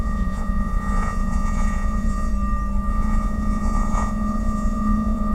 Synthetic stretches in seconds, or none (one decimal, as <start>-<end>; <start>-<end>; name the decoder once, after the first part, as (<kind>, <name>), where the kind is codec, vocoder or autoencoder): 0.0-2.3 (vocoder, Vocos); 2.9-5.3